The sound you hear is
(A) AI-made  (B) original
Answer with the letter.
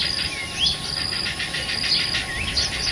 B